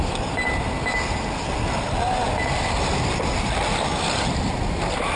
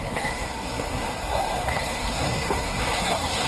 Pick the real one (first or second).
first